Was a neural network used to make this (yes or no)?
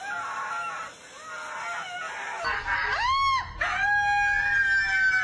no